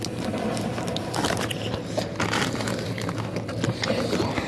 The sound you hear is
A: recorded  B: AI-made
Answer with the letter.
A